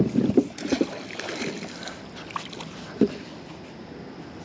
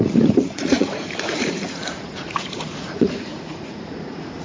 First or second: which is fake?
second